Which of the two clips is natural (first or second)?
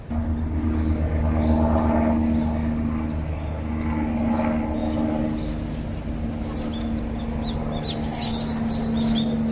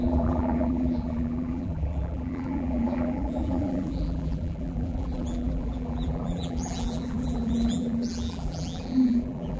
first